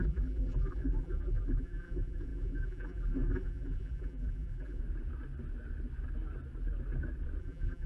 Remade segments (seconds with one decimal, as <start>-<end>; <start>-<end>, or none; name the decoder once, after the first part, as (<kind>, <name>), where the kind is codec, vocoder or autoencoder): 0.0-4.8 (vocoder, BigVGAN v2); 7.4-7.9